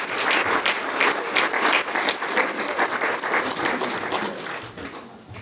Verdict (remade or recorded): recorded